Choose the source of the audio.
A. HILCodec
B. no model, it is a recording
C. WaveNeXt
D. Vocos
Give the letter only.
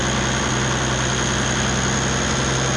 B